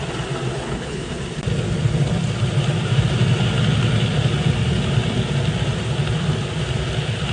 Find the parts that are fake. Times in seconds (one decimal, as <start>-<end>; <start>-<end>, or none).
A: 0.5-1.1